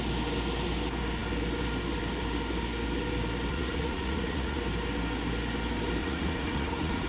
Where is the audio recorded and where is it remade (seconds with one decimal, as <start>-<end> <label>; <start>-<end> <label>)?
0.0-3.5 recorded; 3.5-4.6 remade; 4.6-6.0 recorded; 6.0-7.1 remade